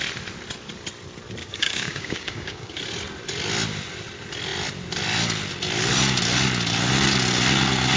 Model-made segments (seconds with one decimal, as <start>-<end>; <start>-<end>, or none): 1.4-2.8